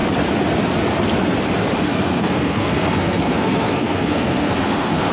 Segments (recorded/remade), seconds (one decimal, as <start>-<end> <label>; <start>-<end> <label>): 0.0-1.8 recorded; 1.8-5.1 remade